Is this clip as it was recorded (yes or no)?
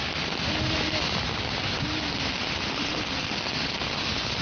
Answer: yes